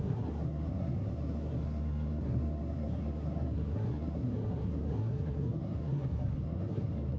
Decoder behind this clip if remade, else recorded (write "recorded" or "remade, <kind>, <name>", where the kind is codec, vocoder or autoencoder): remade, codec, SNAC